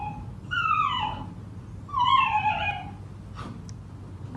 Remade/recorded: recorded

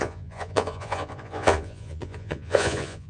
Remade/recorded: remade